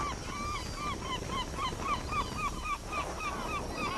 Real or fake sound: real